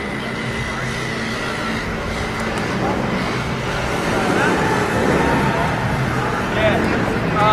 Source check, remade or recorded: recorded